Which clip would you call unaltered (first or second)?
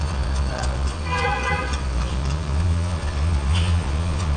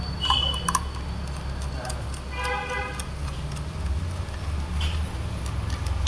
second